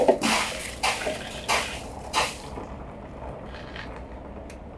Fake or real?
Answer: real